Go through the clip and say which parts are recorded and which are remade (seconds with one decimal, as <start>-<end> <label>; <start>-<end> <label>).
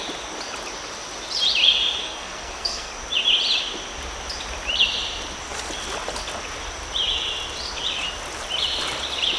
0.0-2.0 recorded; 2.0-2.9 remade; 2.9-9.4 recorded